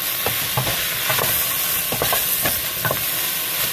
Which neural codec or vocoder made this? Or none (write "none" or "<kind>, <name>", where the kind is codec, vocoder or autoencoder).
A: none